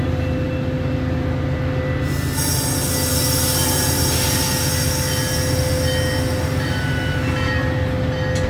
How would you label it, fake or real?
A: real